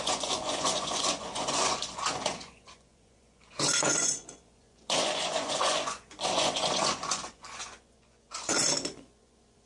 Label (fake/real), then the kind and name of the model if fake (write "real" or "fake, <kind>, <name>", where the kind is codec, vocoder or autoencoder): fake, vocoder, Vocos